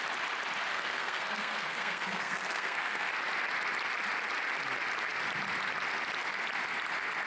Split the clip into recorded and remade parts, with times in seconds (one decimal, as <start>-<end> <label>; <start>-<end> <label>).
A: 0.0-0.7 recorded; 0.7-3.1 remade; 3.1-7.3 recorded